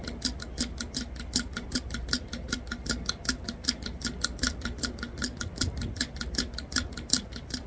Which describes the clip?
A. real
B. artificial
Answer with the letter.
A